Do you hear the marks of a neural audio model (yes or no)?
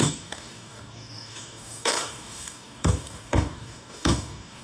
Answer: yes